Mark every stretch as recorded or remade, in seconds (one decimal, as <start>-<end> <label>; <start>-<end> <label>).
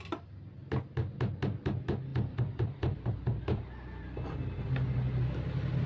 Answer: 0.0-2.1 recorded; 2.1-3.6 remade; 3.6-5.9 recorded